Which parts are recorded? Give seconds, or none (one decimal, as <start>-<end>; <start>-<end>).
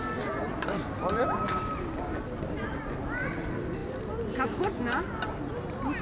0.0-6.0